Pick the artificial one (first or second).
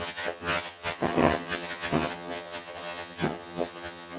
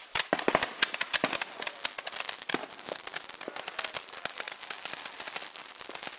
first